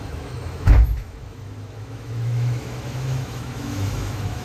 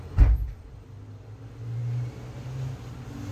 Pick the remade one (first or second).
first